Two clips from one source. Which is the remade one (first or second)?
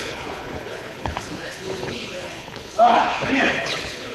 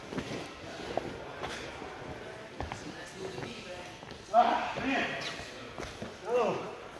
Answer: first